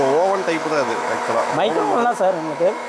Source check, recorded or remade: remade